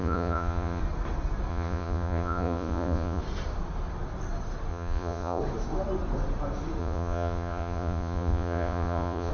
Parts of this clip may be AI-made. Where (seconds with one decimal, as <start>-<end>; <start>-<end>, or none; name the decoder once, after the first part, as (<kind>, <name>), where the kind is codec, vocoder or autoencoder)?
0.0-0.8 (vocoder, Vocos); 1.5-3.2; 4.7-5.4; 6.8-9.3